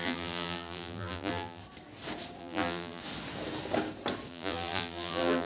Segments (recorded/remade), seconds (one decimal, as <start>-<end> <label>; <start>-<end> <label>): 0.0-1.6 remade; 1.6-2.4 recorded; 2.4-3.0 remade; 3.0-4.3 recorded; 4.3-5.5 remade